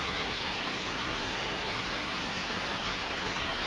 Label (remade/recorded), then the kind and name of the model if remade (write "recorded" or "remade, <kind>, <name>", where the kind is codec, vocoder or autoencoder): remade, codec, SNAC